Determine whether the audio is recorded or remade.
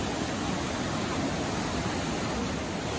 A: recorded